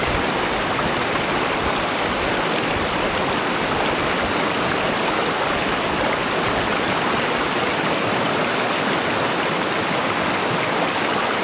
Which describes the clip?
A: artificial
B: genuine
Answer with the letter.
B